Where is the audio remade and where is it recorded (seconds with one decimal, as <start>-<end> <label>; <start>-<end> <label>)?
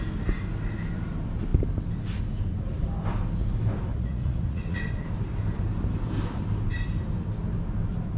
0.0-3.9 recorded; 3.9-4.8 remade; 4.8-8.2 recorded